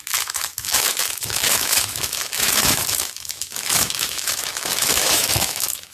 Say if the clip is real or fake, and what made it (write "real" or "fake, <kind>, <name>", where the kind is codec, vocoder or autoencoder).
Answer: fake, autoencoder, DAC-VAE